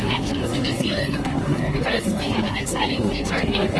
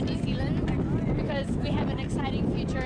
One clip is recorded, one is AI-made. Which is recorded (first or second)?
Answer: second